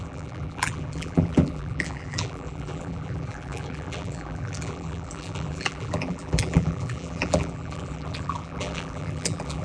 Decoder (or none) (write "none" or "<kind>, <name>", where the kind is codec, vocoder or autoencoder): vocoder, BigVGAN v2